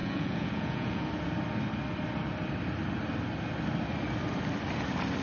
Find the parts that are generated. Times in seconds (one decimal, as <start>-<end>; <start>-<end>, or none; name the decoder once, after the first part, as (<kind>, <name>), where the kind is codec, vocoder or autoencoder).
0.0-1.1 (vocoder, Vocos)